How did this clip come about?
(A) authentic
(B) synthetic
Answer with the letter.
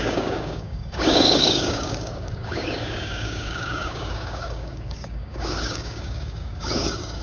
B